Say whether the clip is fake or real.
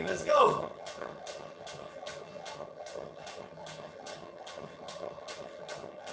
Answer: fake